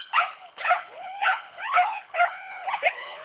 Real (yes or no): no